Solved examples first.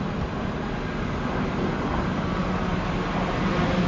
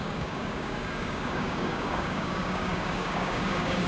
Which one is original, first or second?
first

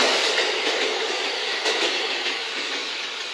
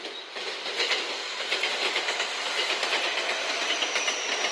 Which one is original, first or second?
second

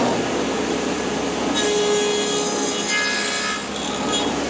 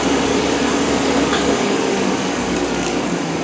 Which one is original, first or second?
first